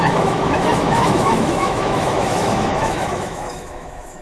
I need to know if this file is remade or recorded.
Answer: remade